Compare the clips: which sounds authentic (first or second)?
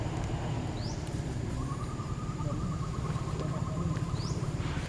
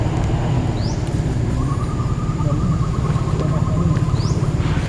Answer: second